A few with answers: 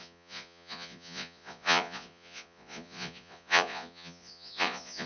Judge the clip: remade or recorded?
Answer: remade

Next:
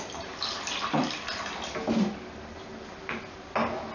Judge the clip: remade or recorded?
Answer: recorded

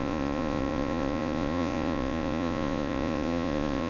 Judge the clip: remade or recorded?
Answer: remade